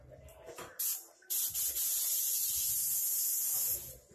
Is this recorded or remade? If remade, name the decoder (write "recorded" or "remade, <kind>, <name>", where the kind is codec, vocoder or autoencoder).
recorded